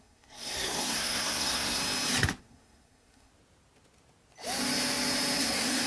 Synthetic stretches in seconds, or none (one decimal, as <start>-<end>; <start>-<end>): 0.0-1.8; 2.4-3.3; 5.4-5.9